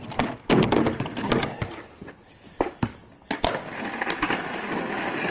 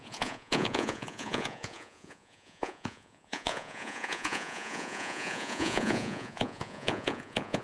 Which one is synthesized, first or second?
second